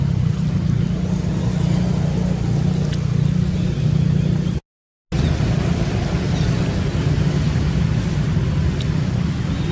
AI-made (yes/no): no